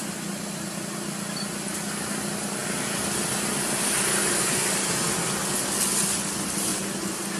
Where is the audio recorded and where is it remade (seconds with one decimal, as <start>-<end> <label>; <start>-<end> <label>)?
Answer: 0.0-2.6 recorded; 2.6-4.4 remade; 4.4-6.7 recorded; 6.7-7.4 remade